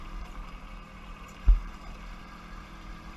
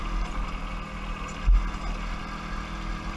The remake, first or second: first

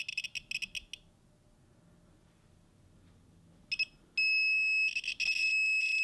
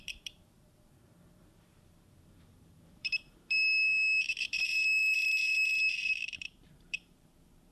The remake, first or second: second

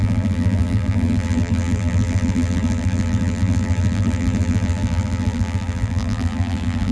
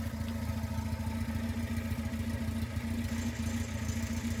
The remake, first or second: first